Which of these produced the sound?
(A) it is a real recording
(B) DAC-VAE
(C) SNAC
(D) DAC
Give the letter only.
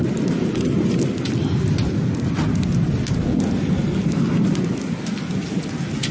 A